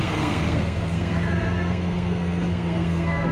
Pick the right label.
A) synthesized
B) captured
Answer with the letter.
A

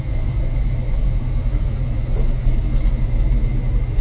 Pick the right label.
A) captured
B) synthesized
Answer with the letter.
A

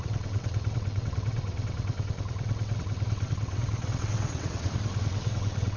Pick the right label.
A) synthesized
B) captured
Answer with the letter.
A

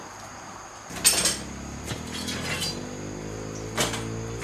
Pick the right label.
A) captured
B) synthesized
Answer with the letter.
A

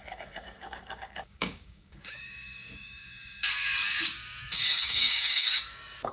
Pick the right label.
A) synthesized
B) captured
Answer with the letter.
A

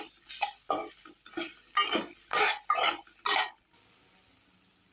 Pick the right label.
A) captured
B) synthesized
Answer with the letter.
A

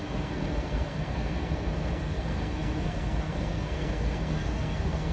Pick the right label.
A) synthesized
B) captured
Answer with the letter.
A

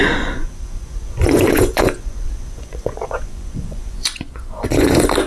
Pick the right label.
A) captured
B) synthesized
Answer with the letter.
B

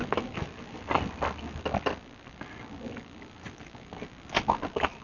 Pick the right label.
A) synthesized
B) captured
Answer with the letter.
B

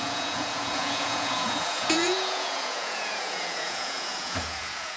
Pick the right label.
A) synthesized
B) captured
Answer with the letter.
A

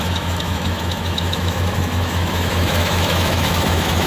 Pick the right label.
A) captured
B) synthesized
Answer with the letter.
B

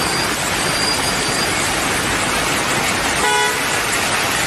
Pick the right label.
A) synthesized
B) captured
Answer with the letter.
B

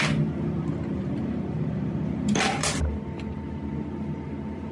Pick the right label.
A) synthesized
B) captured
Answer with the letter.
B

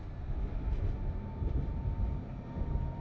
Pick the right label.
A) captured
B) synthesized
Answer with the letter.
A